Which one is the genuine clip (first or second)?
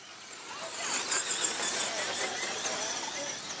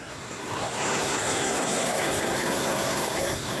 first